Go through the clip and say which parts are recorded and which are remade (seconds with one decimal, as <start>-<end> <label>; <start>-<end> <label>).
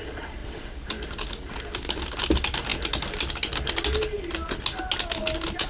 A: 0.0-5.7 recorded